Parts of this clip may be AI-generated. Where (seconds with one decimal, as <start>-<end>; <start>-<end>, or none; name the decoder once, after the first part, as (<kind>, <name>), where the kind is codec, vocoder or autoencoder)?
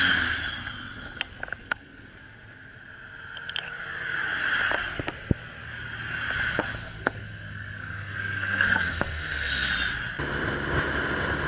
1.6-2.1 (codec, SNAC); 6.8-9.7